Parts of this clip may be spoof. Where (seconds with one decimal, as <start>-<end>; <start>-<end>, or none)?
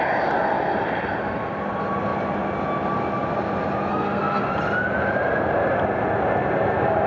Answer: 3.9-4.5